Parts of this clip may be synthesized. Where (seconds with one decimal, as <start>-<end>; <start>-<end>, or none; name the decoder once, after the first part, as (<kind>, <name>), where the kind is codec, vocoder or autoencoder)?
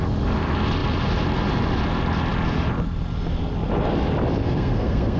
4.4-5.2 (codec, SNAC)